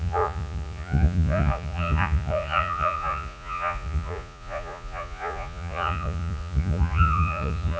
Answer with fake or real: fake